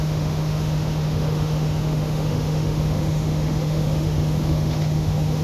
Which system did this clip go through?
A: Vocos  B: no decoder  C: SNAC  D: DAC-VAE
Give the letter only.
D